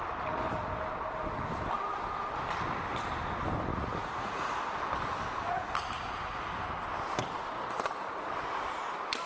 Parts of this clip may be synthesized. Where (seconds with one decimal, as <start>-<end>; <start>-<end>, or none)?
3.7-4.5